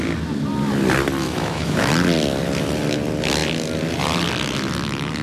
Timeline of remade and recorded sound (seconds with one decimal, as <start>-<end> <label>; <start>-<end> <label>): 0.0-1.2 recorded; 1.2-1.9 remade; 1.9-5.2 recorded